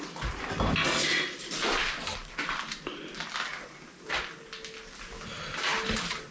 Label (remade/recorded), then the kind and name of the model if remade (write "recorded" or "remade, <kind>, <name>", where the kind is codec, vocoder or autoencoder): recorded